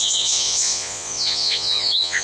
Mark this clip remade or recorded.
remade